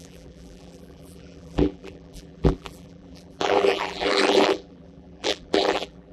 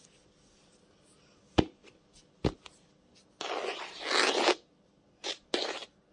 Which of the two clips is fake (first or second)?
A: first